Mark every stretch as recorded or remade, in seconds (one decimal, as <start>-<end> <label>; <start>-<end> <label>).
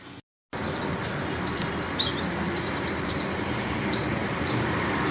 0.0-0.6 recorded; 0.6-3.7 remade; 3.7-4.2 recorded; 4.2-5.1 remade